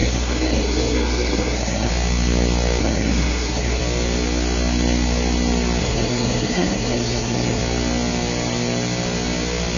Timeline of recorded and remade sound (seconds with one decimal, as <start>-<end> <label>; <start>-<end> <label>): 0.0-1.9 remade; 1.9-2.8 recorded; 2.8-3.8 remade; 3.8-5.8 recorded; 5.8-7.6 remade; 7.6-9.8 recorded